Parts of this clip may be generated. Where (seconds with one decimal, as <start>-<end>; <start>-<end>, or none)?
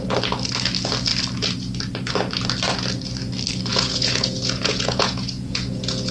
3.7-6.1